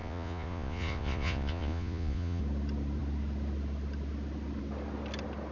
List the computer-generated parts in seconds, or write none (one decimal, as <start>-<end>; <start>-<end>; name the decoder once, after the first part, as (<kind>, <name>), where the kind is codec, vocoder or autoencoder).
0.0-2.4 (vocoder, Vocos)